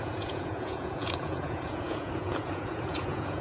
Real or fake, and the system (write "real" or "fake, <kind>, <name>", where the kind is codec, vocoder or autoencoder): fake, vocoder, Vocos